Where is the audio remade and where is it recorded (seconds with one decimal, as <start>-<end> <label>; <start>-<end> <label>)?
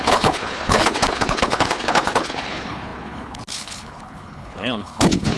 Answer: 0.0-5.4 remade